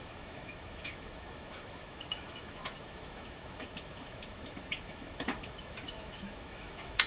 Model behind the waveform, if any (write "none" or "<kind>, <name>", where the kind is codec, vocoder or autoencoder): autoencoder, DAC-VAE